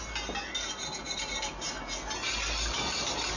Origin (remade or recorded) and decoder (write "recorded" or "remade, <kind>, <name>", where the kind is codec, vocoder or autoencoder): recorded